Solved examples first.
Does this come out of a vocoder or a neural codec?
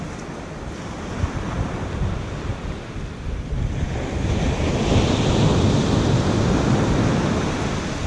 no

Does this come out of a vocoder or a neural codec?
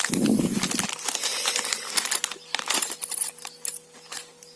no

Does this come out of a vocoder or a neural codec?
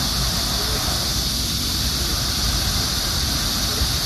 no